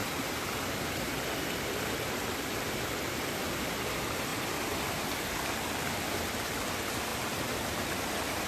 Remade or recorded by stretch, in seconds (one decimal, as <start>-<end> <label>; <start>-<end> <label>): 0.0-3.6 remade; 3.6-4.3 recorded; 4.3-4.9 remade; 4.9-8.5 recorded